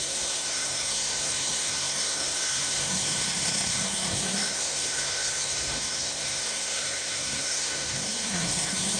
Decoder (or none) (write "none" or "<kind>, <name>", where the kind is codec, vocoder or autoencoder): codec, SNAC